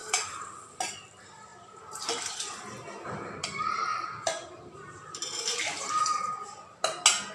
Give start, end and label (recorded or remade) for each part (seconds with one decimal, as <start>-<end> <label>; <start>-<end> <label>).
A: 0.0-0.5 remade; 0.5-1.5 recorded; 1.5-3.4 remade; 3.4-3.9 recorded; 3.9-6.2 remade; 6.2-7.3 recorded